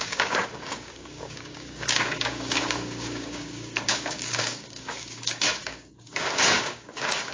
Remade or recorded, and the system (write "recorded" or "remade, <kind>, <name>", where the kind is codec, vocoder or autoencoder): remade, codec, DAC